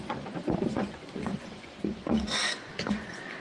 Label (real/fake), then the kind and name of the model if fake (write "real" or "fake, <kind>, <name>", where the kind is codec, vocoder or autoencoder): fake, vocoder, Vocos